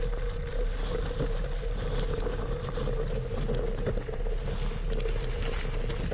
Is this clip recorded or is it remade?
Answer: recorded